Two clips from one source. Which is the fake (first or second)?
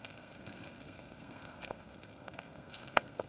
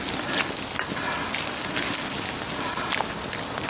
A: first